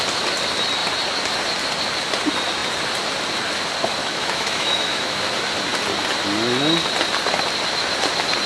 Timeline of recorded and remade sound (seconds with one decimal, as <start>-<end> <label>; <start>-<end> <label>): 0.0-4.0 recorded; 4.0-5.2 remade; 5.2-8.5 recorded